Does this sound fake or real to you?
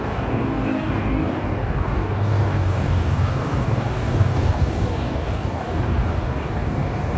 fake